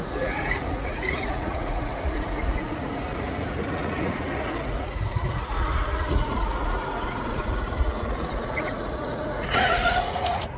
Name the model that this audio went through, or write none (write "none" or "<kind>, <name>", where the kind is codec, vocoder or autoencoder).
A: vocoder, Vocos